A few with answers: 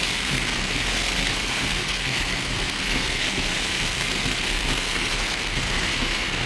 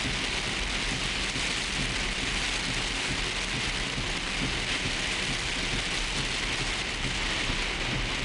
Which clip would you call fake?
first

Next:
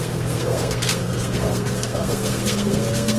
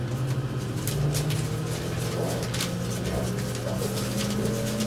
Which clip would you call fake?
first